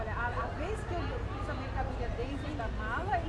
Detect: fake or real real